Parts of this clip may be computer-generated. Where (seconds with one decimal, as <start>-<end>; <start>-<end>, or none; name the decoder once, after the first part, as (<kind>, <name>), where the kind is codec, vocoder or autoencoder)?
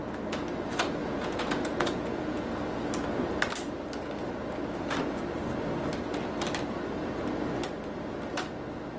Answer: 1.0-2.8 (vocoder, Vocos)